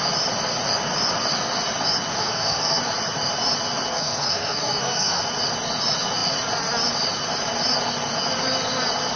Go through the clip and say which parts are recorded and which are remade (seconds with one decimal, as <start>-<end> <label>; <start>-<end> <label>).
0.0-2.2 recorded; 2.2-2.8 remade; 2.8-3.9 recorded; 3.9-5.2 remade; 5.2-9.2 recorded